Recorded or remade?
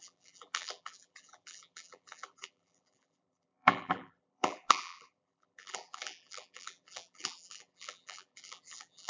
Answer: remade